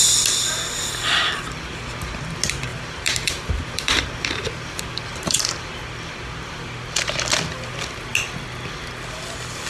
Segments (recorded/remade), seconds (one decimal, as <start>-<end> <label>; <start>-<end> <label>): 0.0-2.7 recorded; 2.7-5.8 remade; 5.8-9.7 recorded